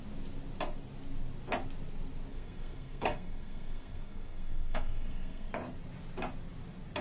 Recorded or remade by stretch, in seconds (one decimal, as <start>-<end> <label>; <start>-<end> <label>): 0.0-2.3 recorded; 2.3-5.5 remade; 5.5-7.0 recorded